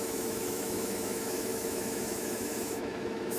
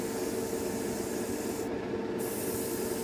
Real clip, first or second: second